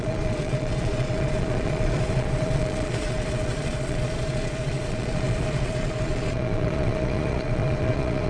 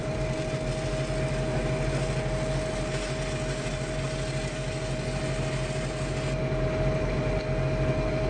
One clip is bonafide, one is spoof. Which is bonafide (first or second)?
second